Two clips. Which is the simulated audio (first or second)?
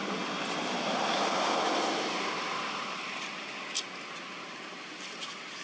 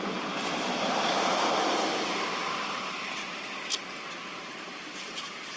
second